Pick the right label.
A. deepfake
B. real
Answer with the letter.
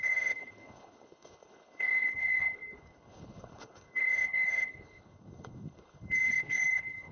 A